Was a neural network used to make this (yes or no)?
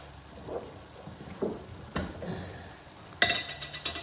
no